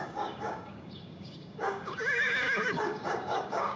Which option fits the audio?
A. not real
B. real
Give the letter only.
A